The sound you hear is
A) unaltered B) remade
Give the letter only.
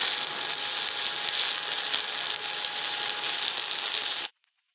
A